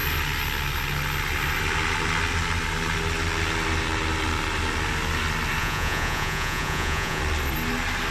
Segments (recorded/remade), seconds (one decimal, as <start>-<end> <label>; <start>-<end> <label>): 0.0-5.6 recorded; 5.6-7.2 remade; 7.2-8.1 recorded